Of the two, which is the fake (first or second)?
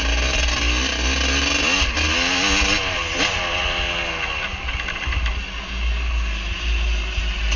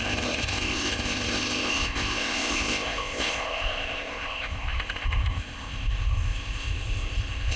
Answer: second